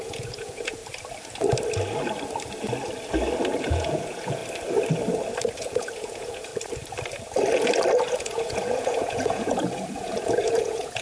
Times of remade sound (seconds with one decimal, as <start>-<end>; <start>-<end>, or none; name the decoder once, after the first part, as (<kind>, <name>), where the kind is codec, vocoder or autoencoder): 0.0-0.8 (vocoder, Vocos); 3.6-4.4; 5.6-6.5; 8.1-11.0